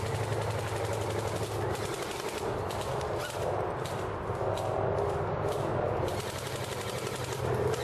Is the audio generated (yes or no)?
no